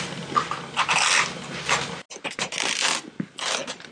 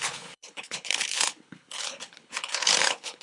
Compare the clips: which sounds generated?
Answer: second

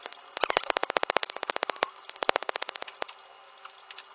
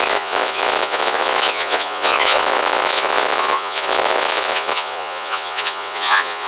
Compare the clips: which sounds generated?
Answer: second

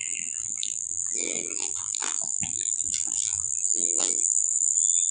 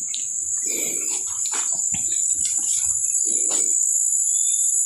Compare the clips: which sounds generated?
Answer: first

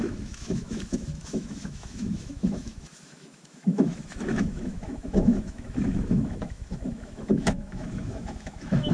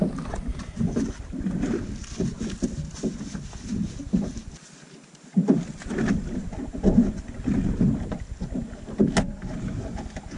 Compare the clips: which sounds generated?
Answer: first